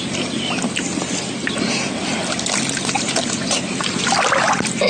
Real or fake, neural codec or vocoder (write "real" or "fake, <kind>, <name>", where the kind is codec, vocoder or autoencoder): real